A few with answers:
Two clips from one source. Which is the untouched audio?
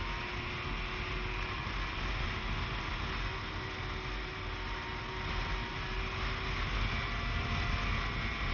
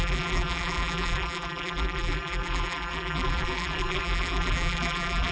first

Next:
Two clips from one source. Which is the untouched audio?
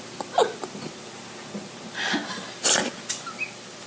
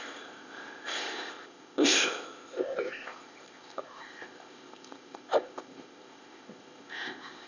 first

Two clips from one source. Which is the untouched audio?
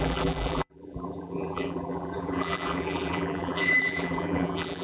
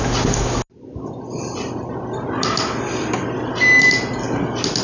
second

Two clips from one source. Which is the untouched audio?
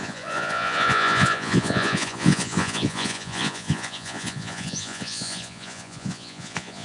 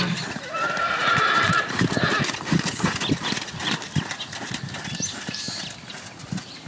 second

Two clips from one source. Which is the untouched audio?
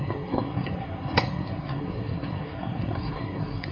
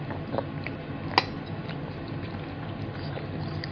second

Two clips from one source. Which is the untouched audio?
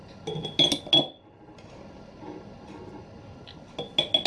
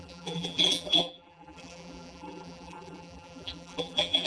first